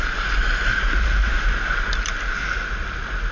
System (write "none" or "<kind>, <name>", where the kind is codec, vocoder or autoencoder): none